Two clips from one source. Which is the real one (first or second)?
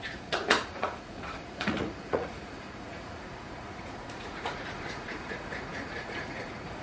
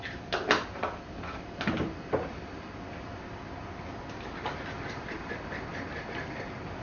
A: second